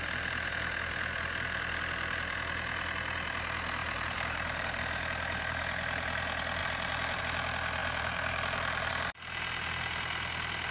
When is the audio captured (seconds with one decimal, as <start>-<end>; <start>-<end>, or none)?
0.0-3.8; 4.8-6.6; 7.2-7.8; 8.9-10.7